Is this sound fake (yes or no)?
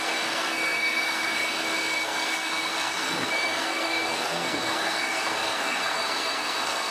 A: yes